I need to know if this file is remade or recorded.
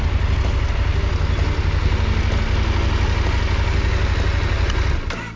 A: recorded